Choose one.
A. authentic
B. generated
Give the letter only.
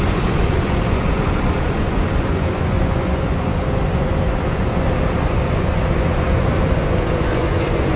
B